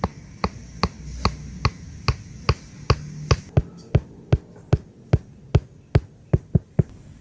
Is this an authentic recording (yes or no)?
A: yes